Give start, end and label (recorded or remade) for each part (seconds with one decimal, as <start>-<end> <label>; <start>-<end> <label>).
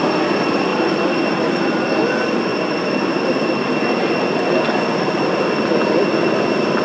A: 0.0-2.5 remade; 2.5-6.8 recorded